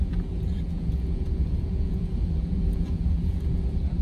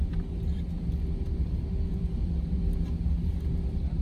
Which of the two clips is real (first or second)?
second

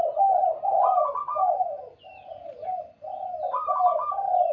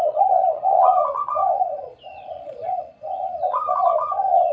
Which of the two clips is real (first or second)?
first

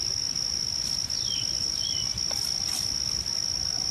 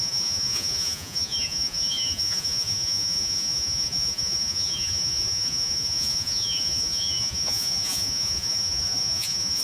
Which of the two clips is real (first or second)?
first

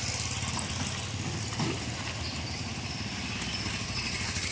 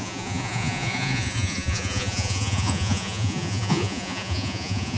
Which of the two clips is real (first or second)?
first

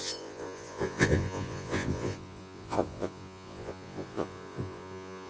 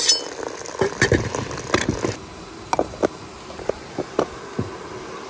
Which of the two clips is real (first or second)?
second